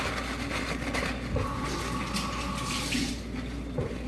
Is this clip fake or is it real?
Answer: real